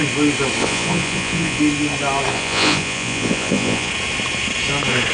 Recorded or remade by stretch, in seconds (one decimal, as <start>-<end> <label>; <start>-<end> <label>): 0.0-0.6 recorded; 0.6-1.6 remade; 1.6-2.3 recorded; 2.3-3.9 remade; 3.9-5.1 recorded